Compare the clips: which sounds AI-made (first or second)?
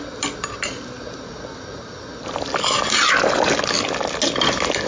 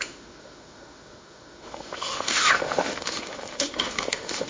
second